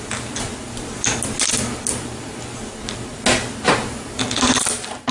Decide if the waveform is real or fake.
real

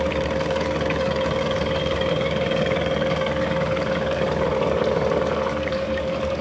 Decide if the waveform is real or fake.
fake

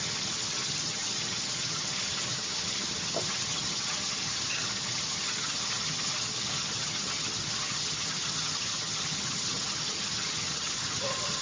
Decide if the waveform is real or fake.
fake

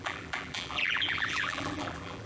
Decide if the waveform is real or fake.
fake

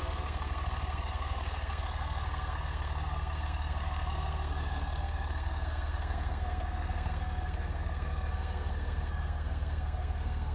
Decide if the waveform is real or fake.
fake